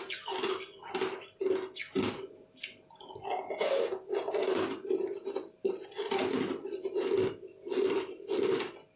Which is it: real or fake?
real